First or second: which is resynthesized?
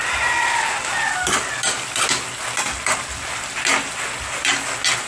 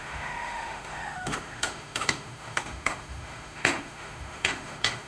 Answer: second